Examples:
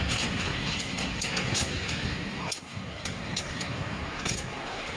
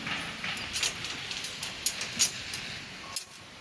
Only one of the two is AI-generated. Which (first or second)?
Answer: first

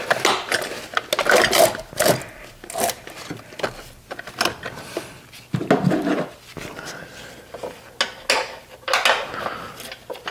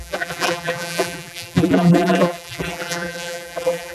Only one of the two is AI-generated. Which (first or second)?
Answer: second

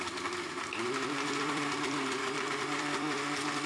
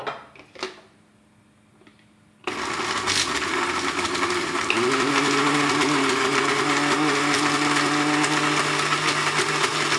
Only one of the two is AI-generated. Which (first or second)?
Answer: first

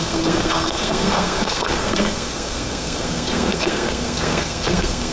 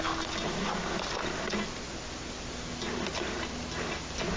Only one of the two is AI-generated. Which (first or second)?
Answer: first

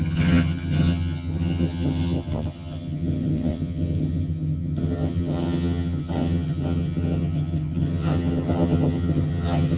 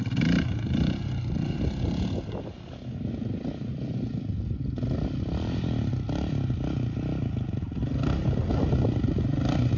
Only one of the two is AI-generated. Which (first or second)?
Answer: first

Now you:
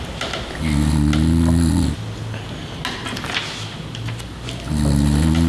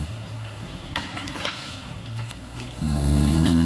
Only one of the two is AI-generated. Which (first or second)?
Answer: second